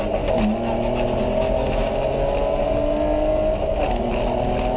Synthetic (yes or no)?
no